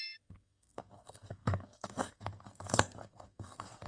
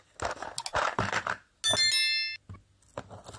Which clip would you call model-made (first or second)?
first